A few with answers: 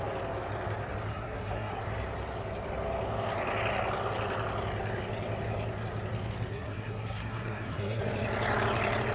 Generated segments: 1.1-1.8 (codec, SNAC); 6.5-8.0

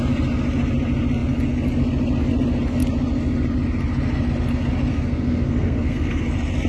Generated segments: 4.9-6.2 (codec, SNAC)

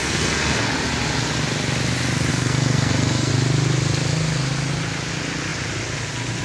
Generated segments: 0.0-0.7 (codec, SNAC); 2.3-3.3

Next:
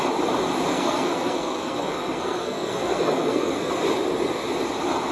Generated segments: 0.7-3.7 (codec, SNAC)

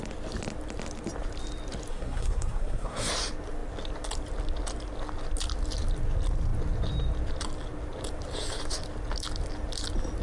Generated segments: 1.9-3.1 (codec, SNAC)

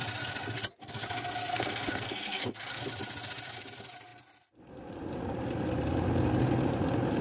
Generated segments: 1.5-2.8 (codec, SNAC)

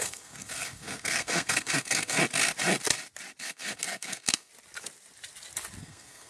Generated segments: 0.0-2.2 (codec, SNAC); 3.4-4.5; 5.8-6.3